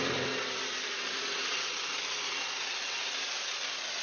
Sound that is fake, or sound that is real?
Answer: fake